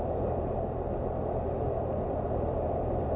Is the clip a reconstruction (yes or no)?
no